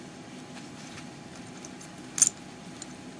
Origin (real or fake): real